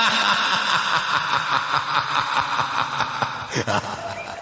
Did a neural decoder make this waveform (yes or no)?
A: no